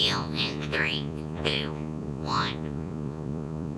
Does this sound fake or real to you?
fake